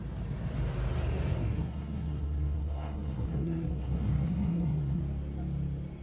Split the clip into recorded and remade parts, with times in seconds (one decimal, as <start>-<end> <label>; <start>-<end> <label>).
0.0-1.4 recorded; 1.4-5.0 remade; 5.0-6.0 recorded